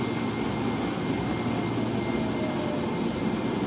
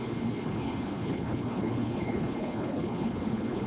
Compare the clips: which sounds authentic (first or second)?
first